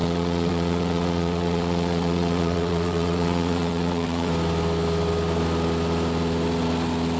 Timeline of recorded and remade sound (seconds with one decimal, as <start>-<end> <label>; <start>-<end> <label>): 0.0-4.3 remade; 4.3-7.2 recorded